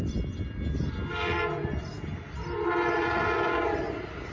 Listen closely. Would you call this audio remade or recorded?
recorded